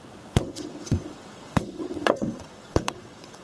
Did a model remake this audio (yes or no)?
yes